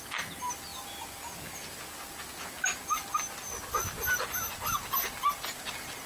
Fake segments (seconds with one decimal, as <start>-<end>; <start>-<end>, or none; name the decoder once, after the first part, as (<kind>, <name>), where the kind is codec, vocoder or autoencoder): none